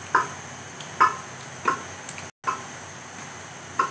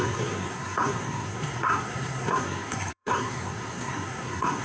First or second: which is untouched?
first